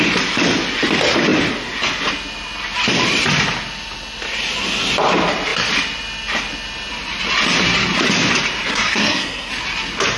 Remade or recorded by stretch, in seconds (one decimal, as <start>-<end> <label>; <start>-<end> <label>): 0.0-8.7 recorded; 8.7-9.5 remade; 9.5-10.2 recorded